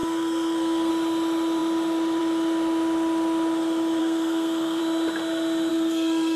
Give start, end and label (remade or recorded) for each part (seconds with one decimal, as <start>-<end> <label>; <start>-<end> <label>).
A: 0.0-0.9 remade; 0.9-4.0 recorded; 4.0-4.8 remade; 4.8-5.7 recorded; 5.7-6.4 remade